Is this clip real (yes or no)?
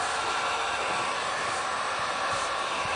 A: yes